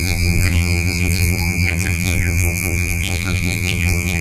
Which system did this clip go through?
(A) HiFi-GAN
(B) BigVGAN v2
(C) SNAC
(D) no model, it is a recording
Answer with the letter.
B